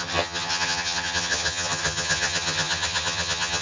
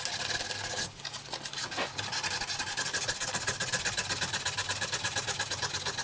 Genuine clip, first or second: second